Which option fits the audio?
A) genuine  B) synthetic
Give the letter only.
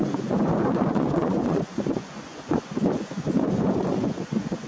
B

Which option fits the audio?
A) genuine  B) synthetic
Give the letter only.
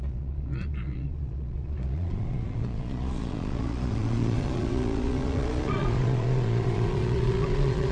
B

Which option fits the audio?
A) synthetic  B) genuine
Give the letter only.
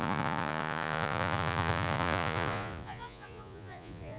A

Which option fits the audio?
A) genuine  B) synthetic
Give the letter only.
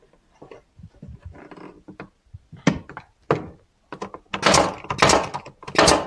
A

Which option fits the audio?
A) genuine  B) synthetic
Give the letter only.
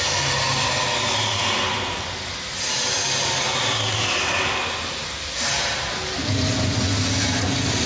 A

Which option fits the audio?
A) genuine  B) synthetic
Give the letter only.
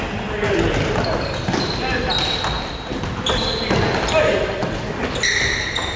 A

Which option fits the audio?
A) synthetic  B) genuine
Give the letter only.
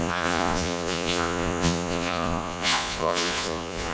A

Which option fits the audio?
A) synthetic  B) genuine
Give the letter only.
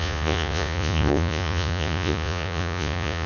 A